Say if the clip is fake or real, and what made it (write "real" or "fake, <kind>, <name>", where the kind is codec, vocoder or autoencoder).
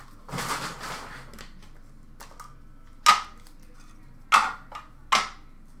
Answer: real